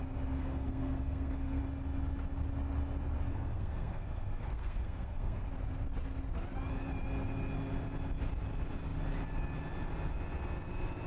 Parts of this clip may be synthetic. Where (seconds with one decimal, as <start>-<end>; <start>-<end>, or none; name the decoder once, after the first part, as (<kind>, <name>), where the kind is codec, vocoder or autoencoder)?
0.4-1.6 (codec, SNAC); 3.3-5.4